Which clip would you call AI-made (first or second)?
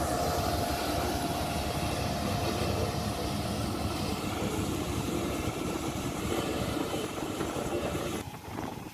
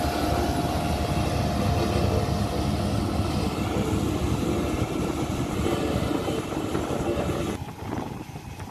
first